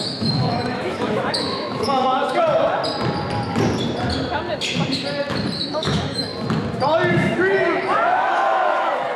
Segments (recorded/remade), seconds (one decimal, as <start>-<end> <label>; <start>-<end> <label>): 0.0-2.8 remade; 2.8-5.6 recorded; 5.6-6.3 remade; 6.3-7.1 recorded; 7.1-9.2 remade